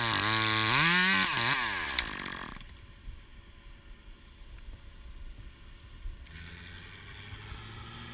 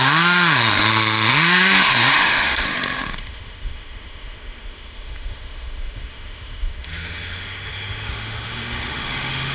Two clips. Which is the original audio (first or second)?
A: first